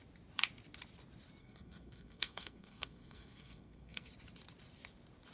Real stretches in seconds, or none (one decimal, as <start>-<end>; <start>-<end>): 0.0-1.4; 4.1-5.3